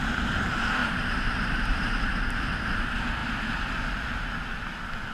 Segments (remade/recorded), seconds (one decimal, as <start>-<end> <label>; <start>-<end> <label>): 0.0-0.8 recorded; 0.8-2.1 remade; 2.1-5.1 recorded